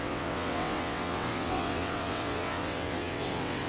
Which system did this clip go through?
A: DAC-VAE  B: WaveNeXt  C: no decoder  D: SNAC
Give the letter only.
B